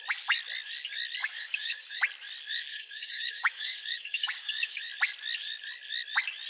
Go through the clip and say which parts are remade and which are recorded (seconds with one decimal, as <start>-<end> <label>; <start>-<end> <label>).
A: 0.0-1.2 recorded; 1.2-2.0 remade; 2.0-2.7 recorded; 2.7-4.8 remade; 4.8-6.5 recorded